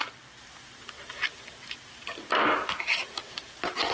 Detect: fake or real real